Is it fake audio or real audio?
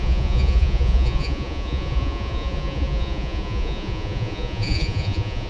fake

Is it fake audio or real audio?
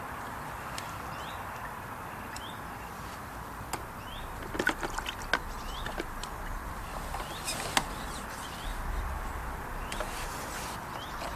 real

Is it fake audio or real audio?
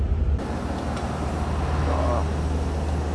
real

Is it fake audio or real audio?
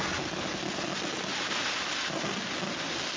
real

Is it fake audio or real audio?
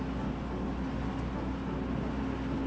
real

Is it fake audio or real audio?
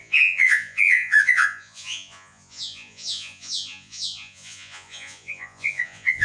fake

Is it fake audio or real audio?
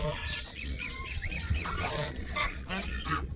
fake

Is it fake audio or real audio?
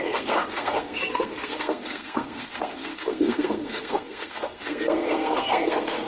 fake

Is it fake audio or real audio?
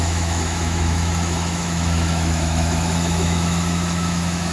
fake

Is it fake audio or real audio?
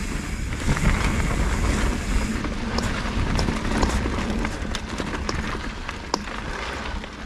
real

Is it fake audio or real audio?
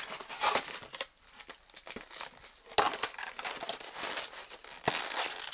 real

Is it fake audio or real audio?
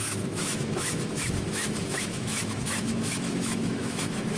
fake